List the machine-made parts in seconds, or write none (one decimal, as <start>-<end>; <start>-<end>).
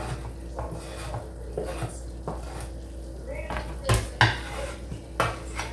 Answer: none